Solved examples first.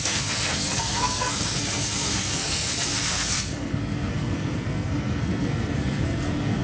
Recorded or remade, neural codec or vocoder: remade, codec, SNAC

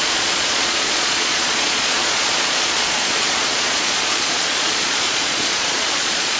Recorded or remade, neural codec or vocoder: remade, vocoder, Vocos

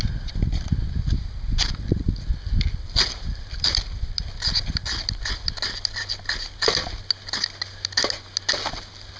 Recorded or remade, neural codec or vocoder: recorded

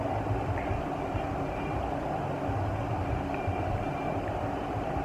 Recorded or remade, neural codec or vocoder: recorded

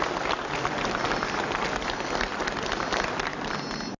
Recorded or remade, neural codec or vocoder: recorded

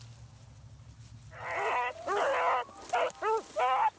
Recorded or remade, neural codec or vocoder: recorded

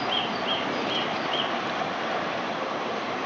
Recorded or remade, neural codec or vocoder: remade, vocoder, BigVGAN v2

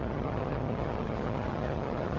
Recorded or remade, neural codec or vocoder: remade, vocoder, HiFi-GAN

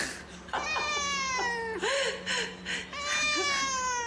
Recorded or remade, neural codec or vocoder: recorded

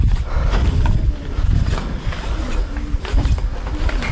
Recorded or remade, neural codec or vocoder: recorded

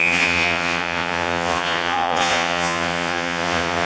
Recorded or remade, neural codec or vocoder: remade, vocoder, Vocos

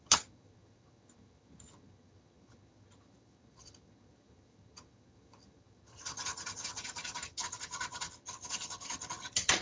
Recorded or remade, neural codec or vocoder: remade, vocoder, HiFi-GAN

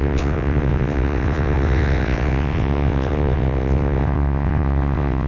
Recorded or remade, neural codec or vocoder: remade, vocoder, WaveNeXt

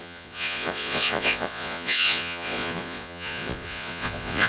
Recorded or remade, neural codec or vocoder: remade, vocoder, Vocos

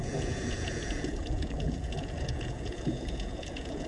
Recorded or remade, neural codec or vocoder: remade, vocoder, Vocos